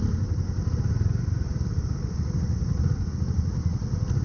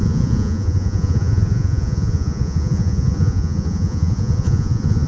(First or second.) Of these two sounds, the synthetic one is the second